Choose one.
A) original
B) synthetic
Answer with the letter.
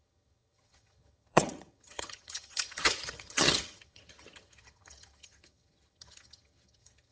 B